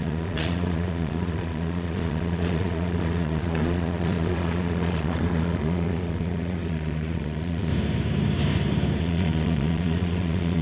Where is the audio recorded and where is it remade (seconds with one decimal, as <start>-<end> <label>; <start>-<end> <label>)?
0.0-7.7 remade; 7.7-9.0 recorded; 9.0-10.6 remade